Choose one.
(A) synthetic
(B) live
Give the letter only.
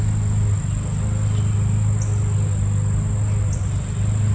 B